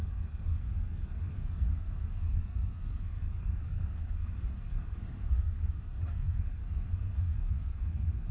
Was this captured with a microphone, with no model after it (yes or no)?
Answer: no